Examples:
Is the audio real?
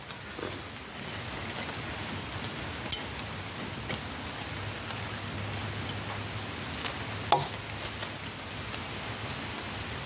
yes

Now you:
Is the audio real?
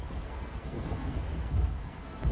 no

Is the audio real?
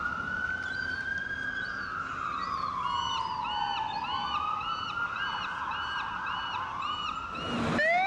yes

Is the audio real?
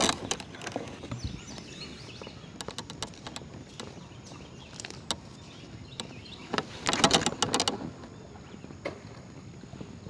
yes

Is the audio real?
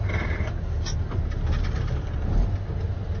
yes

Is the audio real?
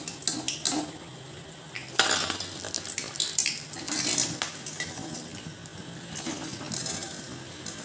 yes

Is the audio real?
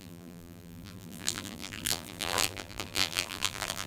no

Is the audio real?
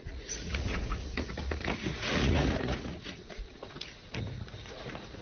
no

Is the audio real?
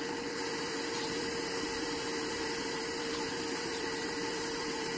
no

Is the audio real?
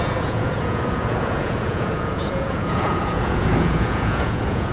no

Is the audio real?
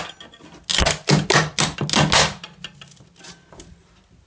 yes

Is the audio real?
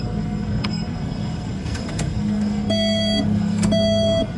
no